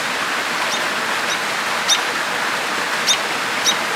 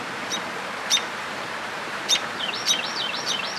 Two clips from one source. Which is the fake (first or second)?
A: second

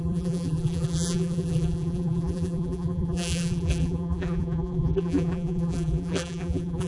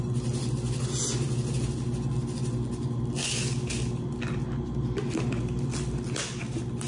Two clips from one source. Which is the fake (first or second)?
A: first